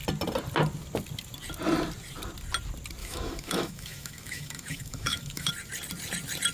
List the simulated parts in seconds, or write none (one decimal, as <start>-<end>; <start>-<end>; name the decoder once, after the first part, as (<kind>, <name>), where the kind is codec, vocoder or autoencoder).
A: 3.0-5.5 (autoencoder, DAC-VAE)